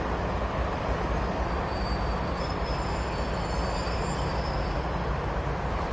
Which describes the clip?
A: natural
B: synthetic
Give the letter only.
A